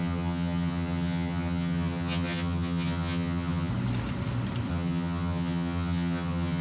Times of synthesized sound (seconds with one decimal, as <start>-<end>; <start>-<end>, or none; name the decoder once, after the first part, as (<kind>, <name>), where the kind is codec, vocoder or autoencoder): 0.0-3.7 (vocoder, HiFi-GAN); 4.7-6.6